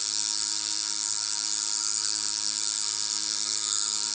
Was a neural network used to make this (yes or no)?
yes